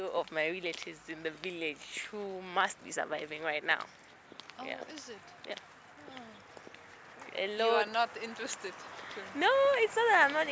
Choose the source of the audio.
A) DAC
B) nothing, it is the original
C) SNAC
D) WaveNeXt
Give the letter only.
B